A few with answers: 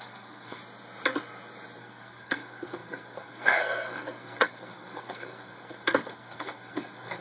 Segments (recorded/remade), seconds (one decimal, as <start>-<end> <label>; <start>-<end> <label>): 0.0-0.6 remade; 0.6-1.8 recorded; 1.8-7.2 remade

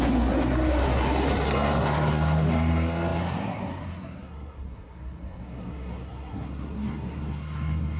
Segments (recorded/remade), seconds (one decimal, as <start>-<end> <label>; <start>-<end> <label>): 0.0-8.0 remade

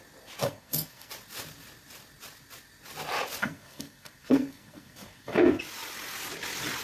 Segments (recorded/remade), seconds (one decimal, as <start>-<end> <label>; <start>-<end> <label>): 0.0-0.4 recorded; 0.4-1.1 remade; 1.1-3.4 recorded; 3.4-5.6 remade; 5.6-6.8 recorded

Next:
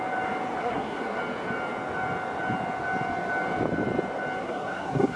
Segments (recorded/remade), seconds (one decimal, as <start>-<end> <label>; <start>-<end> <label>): 0.0-0.6 recorded; 0.6-1.2 remade; 1.2-4.4 recorded; 4.4-5.2 remade

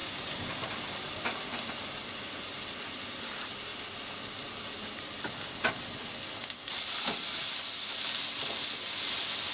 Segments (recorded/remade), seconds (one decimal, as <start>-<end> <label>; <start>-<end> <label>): 0.0-9.5 recorded